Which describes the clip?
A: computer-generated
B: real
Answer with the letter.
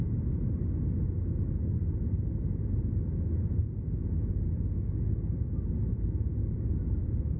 B